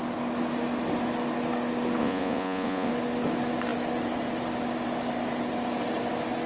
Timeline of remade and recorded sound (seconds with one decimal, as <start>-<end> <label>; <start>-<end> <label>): 0.0-2.0 recorded; 2.0-2.9 remade; 2.9-6.5 recorded